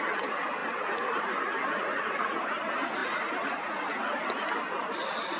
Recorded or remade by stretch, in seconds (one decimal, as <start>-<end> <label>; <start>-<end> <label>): 0.0-1.8 recorded; 1.8-2.4 remade; 2.4-5.4 recorded